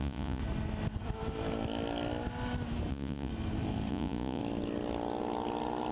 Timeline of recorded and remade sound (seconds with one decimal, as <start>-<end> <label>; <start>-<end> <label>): 0.0-0.4 remade; 0.4-2.9 recorded; 2.9-3.3 remade; 3.3-3.9 recorded; 3.9-4.4 remade; 4.4-5.9 recorded